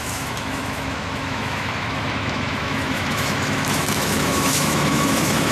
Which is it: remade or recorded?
remade